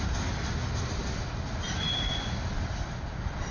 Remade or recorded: recorded